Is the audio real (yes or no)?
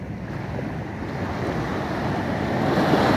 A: yes